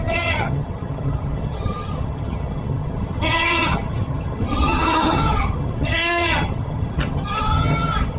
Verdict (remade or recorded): remade